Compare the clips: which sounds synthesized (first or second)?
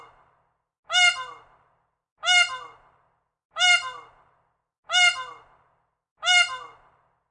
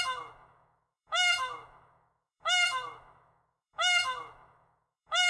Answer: second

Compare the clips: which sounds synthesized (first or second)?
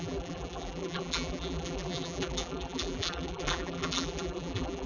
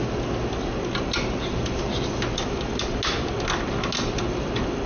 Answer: first